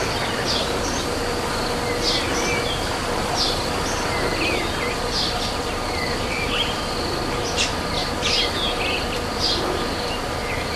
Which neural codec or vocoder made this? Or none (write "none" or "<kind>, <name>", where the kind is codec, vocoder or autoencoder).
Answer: none